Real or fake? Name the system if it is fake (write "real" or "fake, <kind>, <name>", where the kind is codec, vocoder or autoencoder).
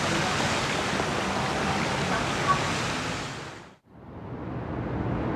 real